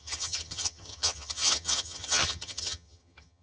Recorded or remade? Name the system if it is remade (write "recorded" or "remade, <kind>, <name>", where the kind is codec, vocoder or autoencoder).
remade, vocoder, HiFi-GAN